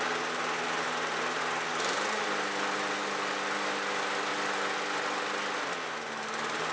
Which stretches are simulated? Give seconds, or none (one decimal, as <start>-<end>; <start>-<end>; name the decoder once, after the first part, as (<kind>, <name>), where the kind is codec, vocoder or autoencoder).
none